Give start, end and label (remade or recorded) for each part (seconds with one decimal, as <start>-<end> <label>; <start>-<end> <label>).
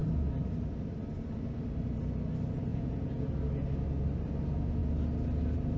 0.0-2.7 recorded; 2.7-3.3 remade; 3.3-5.8 recorded